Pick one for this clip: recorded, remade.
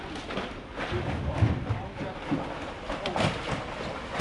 recorded